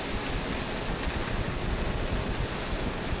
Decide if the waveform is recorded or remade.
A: recorded